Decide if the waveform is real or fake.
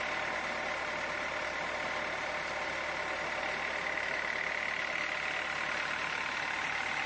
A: real